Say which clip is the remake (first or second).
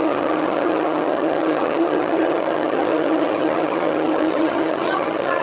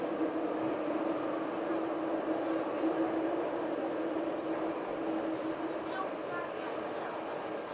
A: first